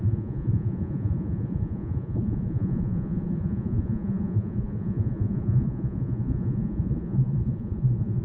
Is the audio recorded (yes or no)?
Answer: no